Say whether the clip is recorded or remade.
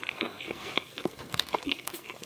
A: remade